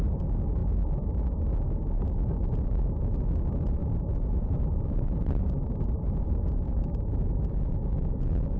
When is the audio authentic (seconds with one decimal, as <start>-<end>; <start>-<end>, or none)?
0.0-3.8; 7.5-8.6